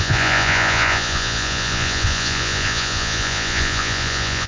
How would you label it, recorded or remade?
remade